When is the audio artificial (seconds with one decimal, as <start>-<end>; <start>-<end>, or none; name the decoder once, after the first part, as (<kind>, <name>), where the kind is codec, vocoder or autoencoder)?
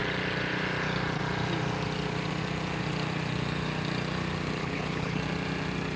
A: 4.6-5.2 (codec, HILCodec)